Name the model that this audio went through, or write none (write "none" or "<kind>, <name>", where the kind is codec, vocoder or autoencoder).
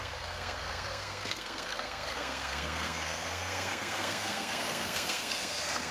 codec, SNAC